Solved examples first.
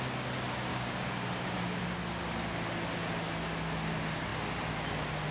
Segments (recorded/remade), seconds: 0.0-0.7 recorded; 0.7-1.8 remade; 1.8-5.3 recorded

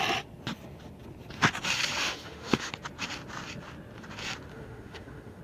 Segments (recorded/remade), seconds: 0.0-2.0 recorded; 2.0-2.7 remade; 2.7-4.5 recorded; 4.5-5.4 remade